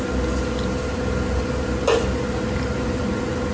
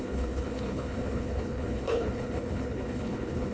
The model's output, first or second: second